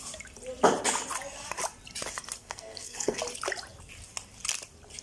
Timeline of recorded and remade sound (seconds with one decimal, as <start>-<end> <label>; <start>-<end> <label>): 0.0-2.4 recorded; 2.4-3.2 remade; 3.2-5.0 recorded